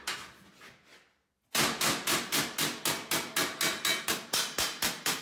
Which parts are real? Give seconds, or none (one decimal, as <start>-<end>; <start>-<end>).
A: 0.9-4.0